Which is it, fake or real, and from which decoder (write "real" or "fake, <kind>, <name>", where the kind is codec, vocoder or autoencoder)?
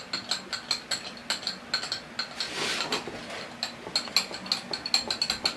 real